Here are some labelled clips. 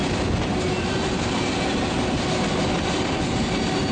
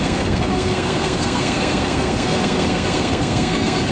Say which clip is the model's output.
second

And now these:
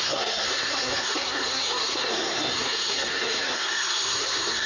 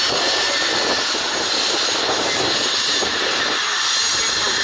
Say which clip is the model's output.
first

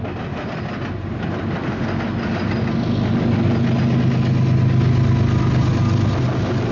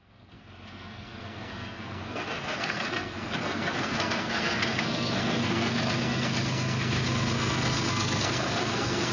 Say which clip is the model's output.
second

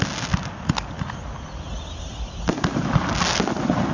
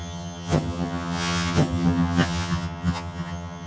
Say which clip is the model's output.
second